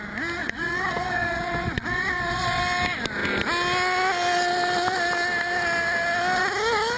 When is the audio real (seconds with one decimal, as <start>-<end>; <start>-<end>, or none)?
0.0-0.4; 2.6-7.0